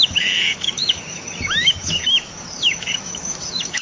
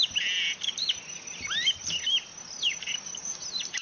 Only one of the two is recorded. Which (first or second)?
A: second